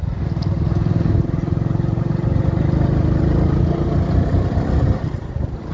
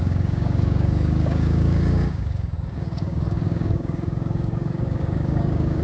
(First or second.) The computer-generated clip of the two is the second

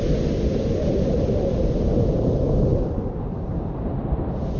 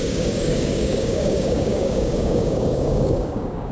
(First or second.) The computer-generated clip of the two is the second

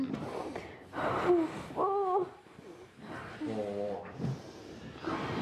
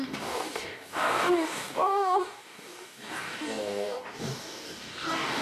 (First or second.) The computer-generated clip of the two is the second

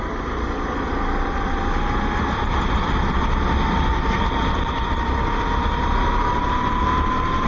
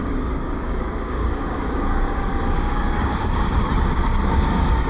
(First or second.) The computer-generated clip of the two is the second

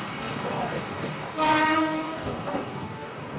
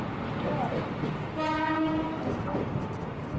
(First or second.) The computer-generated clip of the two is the first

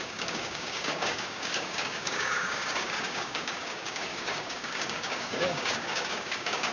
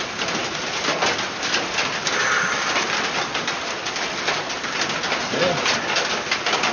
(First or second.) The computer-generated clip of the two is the first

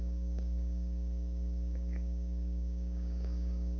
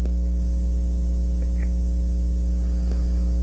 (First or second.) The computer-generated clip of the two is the first